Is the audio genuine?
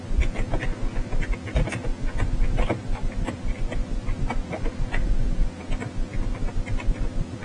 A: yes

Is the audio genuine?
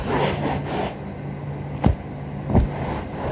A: yes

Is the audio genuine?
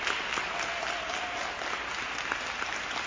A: yes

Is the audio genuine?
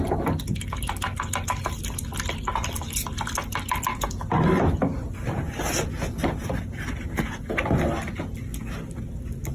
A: yes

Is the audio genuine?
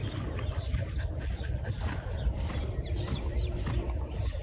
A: no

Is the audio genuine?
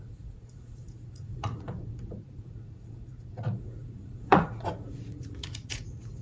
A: no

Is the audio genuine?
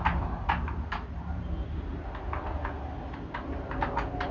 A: yes